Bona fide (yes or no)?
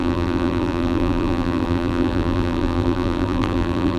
no